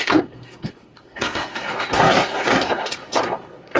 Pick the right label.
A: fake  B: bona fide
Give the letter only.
A